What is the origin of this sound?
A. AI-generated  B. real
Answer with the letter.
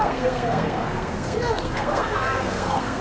A